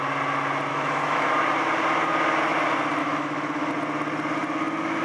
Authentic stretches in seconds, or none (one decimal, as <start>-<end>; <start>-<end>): 0.0-0.7; 1.3-3.0; 3.7-5.0

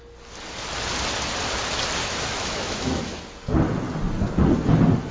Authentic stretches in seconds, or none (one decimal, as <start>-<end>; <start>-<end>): 0.0-2.0; 3.2-5.1

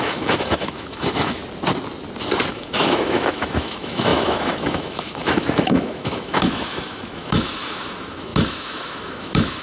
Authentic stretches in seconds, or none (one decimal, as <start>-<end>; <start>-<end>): 1.4-2.5